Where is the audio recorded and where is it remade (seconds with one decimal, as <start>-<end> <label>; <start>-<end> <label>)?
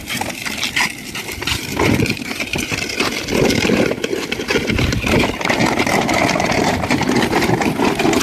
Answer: 0.0-5.6 recorded; 5.6-7.7 remade; 7.7-8.2 recorded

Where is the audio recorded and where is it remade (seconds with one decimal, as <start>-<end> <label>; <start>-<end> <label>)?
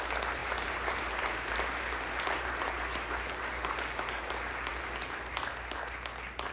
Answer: 0.0-0.4 recorded; 0.4-4.3 remade; 4.3-6.5 recorded